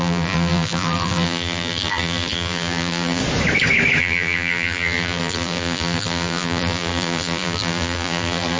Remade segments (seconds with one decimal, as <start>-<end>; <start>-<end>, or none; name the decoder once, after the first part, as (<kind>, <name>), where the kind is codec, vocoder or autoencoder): 0.0-3.2 (vocoder, BigVGAN v2); 4.0-8.6